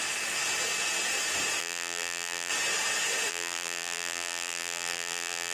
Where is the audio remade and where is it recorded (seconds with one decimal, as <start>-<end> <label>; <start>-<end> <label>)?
0.0-1.6 recorded; 1.6-2.5 remade; 2.5-3.3 recorded; 3.3-5.5 remade